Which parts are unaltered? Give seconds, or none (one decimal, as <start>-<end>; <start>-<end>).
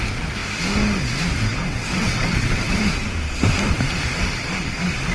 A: 0.0-1.5; 2.8-5.1